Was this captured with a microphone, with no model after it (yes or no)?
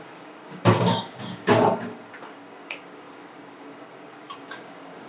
no